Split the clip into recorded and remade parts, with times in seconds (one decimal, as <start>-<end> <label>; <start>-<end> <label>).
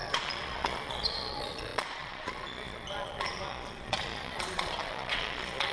0.0-5.7 remade